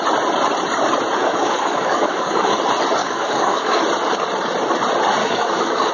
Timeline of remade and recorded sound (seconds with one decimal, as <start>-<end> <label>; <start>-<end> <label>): 0.0-1.2 recorded; 1.2-2.6 remade; 2.6-3.0 recorded; 3.0-3.8 remade; 3.8-5.2 recorded; 5.2-5.9 remade